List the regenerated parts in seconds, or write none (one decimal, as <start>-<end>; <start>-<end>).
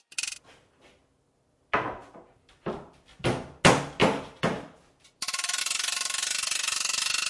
2.0-2.9; 4.0-5.6